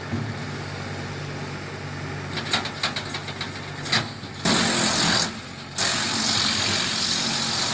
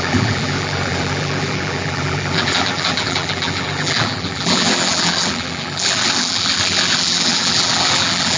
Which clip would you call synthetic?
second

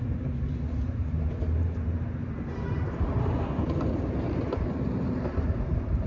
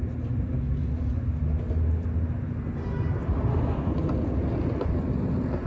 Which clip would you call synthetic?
first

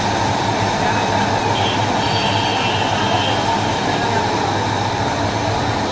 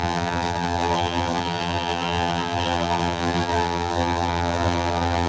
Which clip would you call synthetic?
second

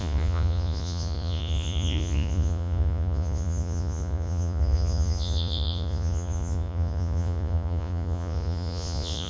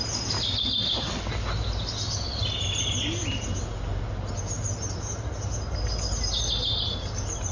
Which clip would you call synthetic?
first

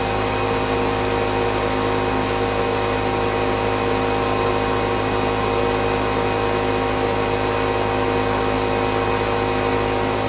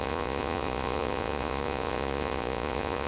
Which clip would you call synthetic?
second